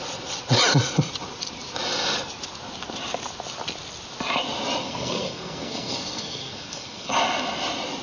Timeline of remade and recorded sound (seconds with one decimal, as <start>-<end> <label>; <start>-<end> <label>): 0.0-4.8 recorded; 4.8-7.1 remade; 7.1-8.0 recorded